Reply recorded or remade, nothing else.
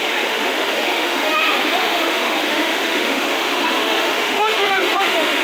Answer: remade